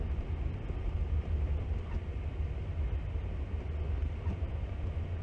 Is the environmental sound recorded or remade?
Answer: recorded